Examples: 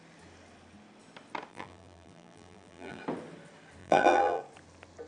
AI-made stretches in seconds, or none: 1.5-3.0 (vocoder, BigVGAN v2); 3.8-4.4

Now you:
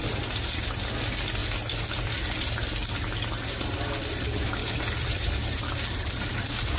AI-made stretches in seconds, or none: 4.6-6.8 (vocoder, BigVGAN v2)

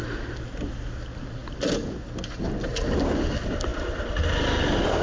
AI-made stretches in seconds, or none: none